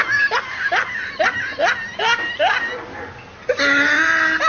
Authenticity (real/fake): real